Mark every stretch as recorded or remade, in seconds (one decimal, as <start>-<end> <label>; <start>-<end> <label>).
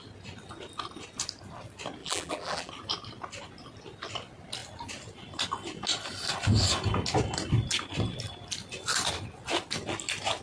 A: 0.0-2.0 recorded; 2.0-2.7 remade; 2.7-10.4 recorded